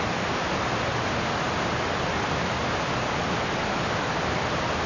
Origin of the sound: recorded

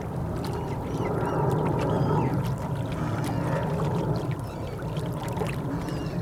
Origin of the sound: recorded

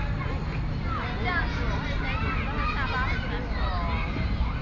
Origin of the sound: recorded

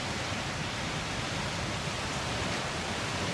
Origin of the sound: recorded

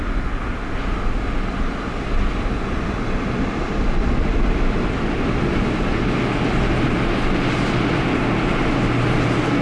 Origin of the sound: recorded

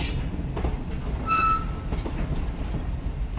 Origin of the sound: recorded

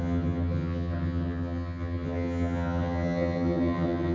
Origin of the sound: remade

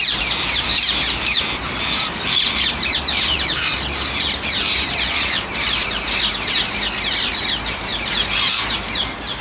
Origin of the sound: remade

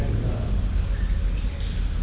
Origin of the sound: recorded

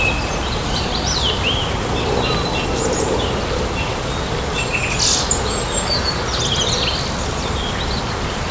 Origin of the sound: recorded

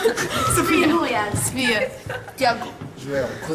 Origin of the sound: remade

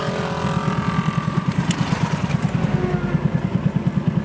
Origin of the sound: recorded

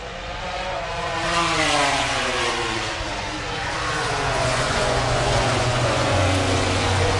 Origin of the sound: remade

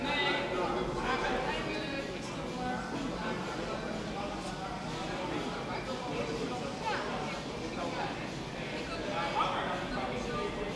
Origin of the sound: recorded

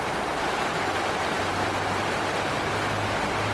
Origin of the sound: recorded